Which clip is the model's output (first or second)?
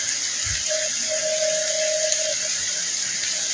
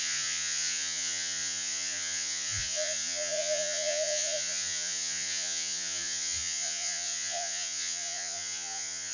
second